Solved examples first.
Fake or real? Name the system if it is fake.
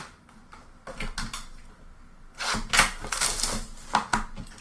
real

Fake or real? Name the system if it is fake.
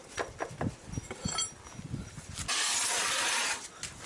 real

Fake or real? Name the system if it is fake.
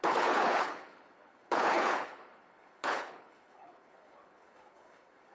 fake, codec, HILCodec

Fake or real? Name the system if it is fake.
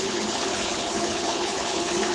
fake, codec, HILCodec